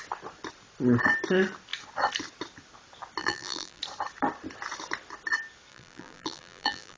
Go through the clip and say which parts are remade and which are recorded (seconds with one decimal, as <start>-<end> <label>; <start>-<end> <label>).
0.0-3.2 recorded; 3.2-3.8 remade; 3.8-5.7 recorded; 5.7-7.0 remade